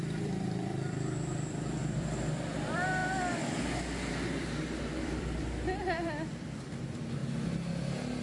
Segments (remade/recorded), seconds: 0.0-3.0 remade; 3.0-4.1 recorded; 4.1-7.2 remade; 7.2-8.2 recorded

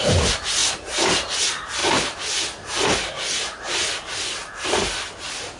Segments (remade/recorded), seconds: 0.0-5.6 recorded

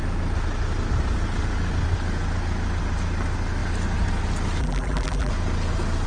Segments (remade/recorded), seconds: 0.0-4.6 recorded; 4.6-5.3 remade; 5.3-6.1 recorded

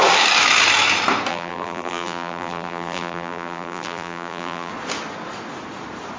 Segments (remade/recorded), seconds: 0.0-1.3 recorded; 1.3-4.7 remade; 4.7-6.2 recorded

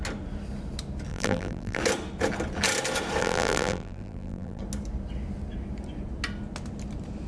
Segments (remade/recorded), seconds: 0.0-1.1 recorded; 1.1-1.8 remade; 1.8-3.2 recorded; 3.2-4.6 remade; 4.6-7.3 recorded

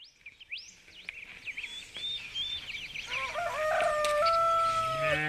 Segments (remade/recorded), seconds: 0.0-5.3 recorded